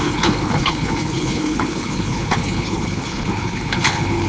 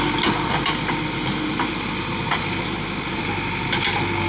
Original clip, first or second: second